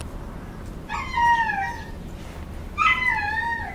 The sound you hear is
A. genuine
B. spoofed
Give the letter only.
A